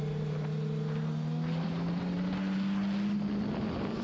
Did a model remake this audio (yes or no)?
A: no